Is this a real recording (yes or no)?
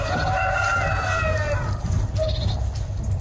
yes